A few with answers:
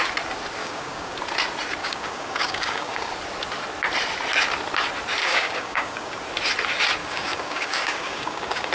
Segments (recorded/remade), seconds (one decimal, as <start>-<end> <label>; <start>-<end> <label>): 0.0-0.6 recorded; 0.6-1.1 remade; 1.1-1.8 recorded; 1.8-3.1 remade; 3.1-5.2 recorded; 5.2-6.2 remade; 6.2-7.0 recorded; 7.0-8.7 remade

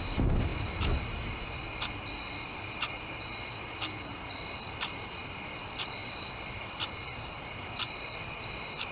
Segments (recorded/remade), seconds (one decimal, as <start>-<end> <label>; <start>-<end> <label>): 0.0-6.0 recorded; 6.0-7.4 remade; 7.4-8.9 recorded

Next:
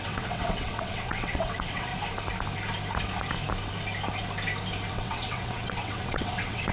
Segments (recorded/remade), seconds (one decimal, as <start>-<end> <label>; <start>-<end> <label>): 0.0-1.9 remade; 1.9-4.9 recorded; 4.9-6.7 remade

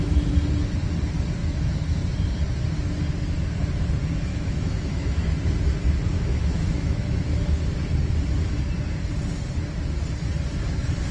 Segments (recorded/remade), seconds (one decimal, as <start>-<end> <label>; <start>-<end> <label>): 0.0-1.4 recorded; 1.4-2.0 remade; 2.0-4.3 recorded; 4.3-5.3 remade; 5.3-6.1 recorded; 6.1-7.6 remade; 7.6-11.1 recorded

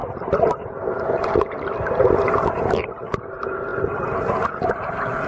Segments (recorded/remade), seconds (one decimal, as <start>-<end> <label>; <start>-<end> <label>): 0.0-3.2 remade; 3.2-5.3 recorded

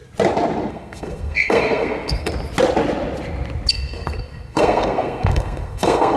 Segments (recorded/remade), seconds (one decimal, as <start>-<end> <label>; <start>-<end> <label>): 0.0-0.7 recorded; 0.7-2.3 remade; 2.3-3.7 recorded; 3.7-6.2 remade